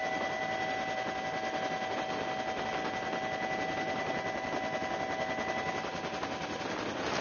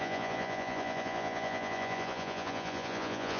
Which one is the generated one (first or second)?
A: second